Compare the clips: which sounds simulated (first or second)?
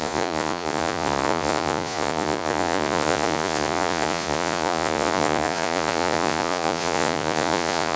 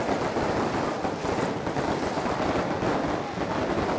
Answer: first